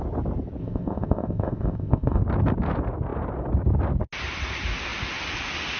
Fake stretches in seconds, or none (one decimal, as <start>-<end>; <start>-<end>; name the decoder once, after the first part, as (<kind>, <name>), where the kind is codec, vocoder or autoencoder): 0.6-2.2 (codec, ZipCodec)